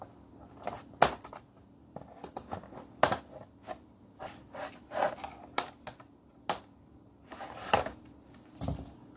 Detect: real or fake real